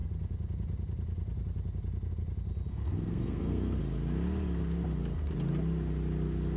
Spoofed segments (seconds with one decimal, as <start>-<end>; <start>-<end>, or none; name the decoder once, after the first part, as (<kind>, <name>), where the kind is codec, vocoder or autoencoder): 2.7-3.8 (codec, SNAC)